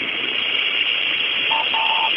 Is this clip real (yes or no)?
no